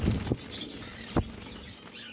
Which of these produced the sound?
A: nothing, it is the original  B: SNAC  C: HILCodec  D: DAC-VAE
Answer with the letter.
A